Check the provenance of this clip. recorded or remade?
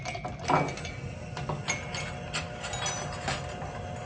recorded